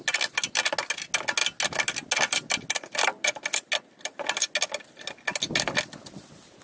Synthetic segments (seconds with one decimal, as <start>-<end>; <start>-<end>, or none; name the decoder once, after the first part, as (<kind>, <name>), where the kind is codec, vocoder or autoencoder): none